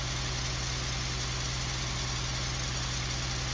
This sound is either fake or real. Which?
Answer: real